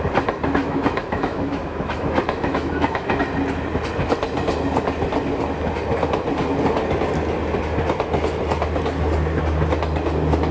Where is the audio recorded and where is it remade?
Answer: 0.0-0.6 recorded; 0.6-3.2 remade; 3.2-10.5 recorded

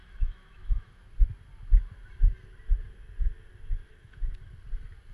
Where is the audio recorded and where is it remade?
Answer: 0.0-1.1 remade; 1.1-3.9 recorded; 3.9-4.5 remade; 4.5-5.1 recorded

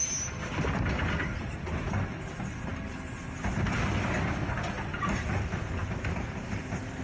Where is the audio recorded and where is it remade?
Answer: 0.0-7.0 recorded